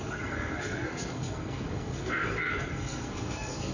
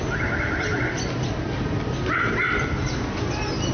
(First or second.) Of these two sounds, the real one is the second